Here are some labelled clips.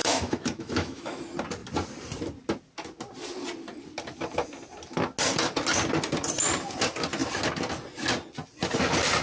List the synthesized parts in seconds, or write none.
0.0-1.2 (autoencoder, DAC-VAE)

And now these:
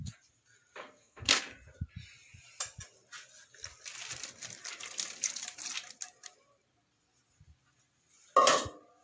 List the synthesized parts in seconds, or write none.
0.8-1.4 (codec, SNAC)

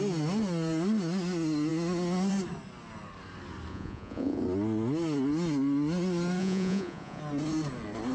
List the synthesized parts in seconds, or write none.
3.7-4.4 (vocoder, Vocos); 6.4-7.2

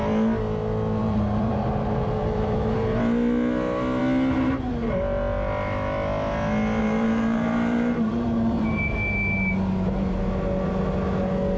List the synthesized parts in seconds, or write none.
1.0-3.0 (vocoder, BigVGAN v2); 6.8-8.8